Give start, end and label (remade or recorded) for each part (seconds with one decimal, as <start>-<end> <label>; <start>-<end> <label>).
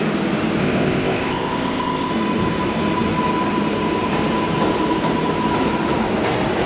0.0-0.6 recorded; 0.6-2.1 remade; 2.1-6.7 recorded